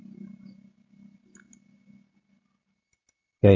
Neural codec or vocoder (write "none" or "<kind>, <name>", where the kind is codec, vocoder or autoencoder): none